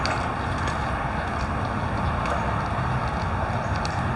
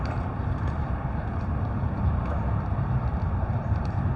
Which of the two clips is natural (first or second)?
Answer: first